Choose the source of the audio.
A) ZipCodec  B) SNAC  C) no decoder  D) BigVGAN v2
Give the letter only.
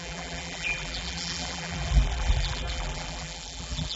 D